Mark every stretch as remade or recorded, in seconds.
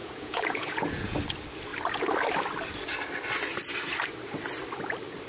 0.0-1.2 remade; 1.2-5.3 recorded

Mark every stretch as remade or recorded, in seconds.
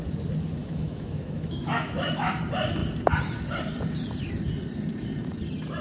0.0-0.6 recorded; 0.6-2.4 remade; 2.4-5.8 recorded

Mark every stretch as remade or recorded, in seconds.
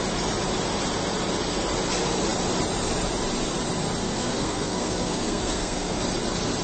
0.0-4.0 recorded; 4.0-6.0 remade; 6.0-6.6 recorded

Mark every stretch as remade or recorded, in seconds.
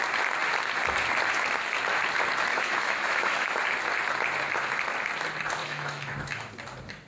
0.0-2.5 recorded; 2.5-3.6 remade; 3.6-5.6 recorded; 5.6-6.5 remade; 6.5-7.1 recorded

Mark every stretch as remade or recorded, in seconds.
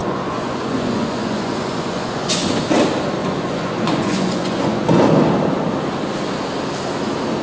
0.0-2.6 remade; 2.6-3.2 recorded; 3.2-5.0 remade; 5.0-7.4 recorded